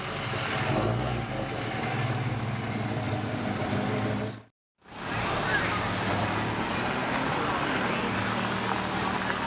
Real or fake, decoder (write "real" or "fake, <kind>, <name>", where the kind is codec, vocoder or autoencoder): real